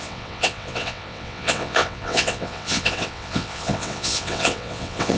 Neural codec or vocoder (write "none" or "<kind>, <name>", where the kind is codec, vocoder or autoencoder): vocoder, WaveNeXt